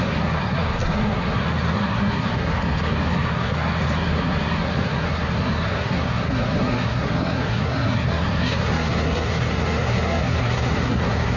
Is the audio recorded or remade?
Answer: remade